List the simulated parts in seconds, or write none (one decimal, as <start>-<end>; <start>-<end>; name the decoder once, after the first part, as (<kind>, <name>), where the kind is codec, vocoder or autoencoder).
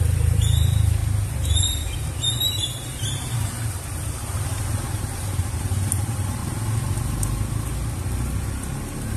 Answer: 0.0-6.4 (vocoder, BigVGAN v2)